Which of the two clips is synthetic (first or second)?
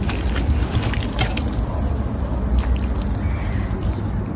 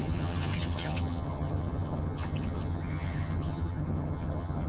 second